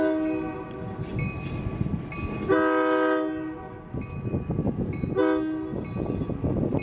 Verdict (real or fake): real